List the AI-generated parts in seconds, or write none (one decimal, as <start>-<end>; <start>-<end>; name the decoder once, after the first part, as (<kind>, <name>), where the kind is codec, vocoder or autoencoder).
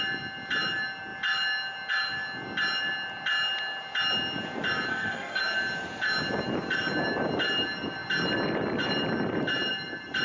4.9-5.4 (codec, SNAC)